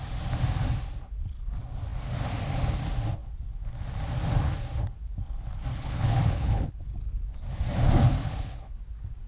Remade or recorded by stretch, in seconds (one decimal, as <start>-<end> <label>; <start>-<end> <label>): 0.0-5.7 recorded; 5.7-6.8 remade; 6.8-8.2 recorded; 8.2-8.8 remade; 8.8-9.3 recorded